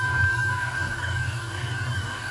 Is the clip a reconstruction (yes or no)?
yes